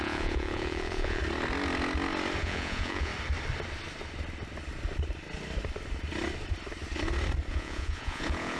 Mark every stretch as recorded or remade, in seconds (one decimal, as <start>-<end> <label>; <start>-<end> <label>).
0.0-1.2 remade; 1.2-2.4 recorded; 2.4-3.1 remade; 3.1-7.5 recorded; 7.5-8.6 remade